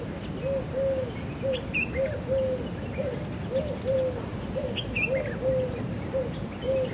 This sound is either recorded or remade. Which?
recorded